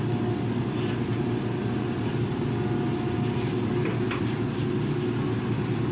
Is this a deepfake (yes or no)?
no